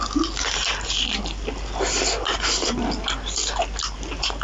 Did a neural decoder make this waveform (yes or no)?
no